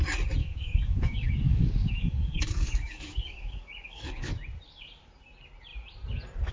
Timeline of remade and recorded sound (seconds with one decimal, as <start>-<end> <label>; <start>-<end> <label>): 0.0-0.4 recorded; 0.4-4.3 remade; 4.3-6.5 recorded